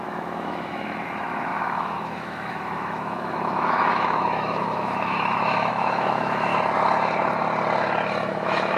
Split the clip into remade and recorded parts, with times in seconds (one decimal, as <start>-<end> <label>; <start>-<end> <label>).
0.0-6.5 remade; 6.5-8.3 recorded; 8.3-8.8 remade